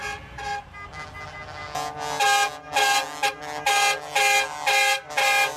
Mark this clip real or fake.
real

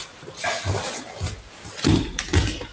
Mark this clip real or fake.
real